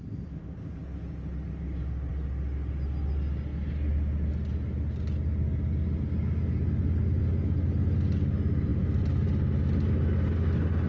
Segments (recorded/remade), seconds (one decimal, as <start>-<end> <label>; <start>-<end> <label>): 0.0-10.9 recorded